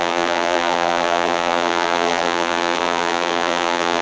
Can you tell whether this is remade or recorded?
remade